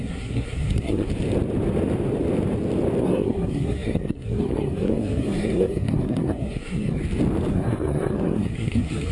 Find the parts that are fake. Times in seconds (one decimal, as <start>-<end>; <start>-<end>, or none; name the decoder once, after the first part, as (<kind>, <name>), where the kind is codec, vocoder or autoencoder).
0.0-1.1 (codec, SNAC); 3.0-7.0; 7.5-9.1